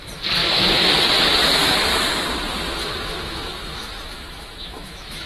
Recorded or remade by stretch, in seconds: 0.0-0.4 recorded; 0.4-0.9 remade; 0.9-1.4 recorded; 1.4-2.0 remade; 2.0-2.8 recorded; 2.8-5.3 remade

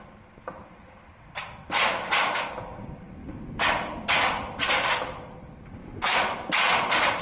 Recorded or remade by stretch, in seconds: 0.0-2.7 recorded; 2.7-3.4 remade; 3.4-5.8 recorded; 5.8-7.2 remade